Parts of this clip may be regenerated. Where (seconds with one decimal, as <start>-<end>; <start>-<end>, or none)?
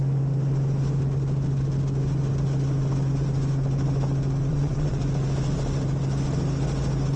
4.5-5.0